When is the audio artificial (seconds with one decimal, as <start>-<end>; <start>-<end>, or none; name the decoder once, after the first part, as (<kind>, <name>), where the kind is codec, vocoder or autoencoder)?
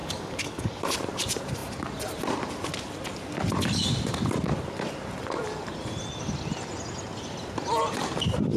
0.0-0.8 (codec, DAC)